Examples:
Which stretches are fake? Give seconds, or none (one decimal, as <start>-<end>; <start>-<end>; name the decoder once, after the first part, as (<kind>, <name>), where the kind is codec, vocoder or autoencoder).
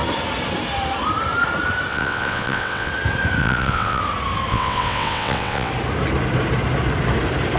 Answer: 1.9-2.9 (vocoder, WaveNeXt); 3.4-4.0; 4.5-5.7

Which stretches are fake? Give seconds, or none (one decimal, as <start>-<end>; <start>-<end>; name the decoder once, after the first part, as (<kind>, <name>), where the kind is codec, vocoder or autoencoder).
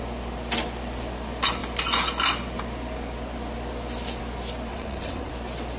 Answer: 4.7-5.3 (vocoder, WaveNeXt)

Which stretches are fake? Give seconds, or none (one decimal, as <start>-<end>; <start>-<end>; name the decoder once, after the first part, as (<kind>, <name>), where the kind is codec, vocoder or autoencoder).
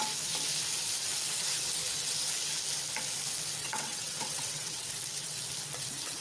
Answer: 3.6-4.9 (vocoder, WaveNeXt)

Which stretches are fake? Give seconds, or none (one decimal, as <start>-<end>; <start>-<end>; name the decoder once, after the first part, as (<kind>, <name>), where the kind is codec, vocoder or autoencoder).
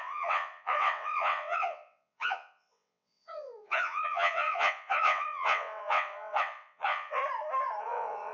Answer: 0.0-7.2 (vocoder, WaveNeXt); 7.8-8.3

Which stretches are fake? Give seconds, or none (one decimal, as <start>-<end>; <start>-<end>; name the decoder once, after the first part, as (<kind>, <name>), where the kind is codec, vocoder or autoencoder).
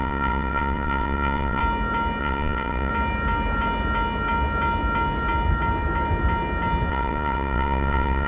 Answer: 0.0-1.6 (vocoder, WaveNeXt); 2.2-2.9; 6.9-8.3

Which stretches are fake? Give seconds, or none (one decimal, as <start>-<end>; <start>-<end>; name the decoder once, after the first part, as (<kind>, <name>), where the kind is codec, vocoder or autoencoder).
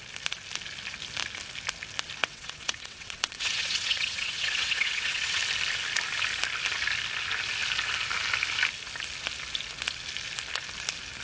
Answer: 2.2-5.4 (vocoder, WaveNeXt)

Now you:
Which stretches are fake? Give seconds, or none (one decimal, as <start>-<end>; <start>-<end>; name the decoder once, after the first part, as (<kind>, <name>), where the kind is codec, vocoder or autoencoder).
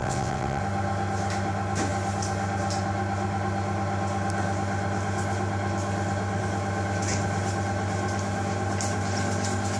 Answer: 0.0-0.6 (vocoder, WaveNeXt)